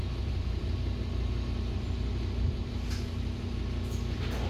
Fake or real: real